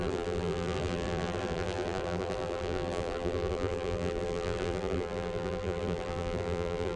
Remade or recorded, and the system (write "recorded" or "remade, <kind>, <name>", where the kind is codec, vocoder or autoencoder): remade, vocoder, BigVGAN v2